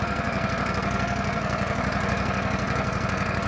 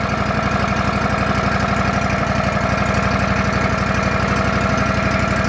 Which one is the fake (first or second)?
first